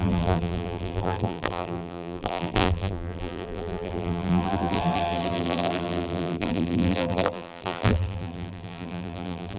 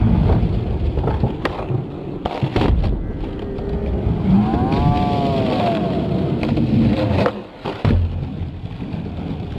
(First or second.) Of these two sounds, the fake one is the first